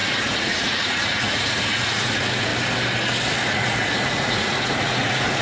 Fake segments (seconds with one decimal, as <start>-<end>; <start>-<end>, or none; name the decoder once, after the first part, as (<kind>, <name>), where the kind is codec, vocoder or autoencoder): 0.0-2.5 (vocoder, Vocos); 3.5-5.4